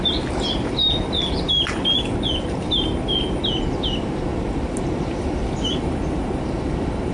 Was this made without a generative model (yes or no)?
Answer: yes